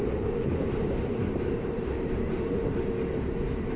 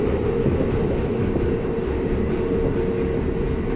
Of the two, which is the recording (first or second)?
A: second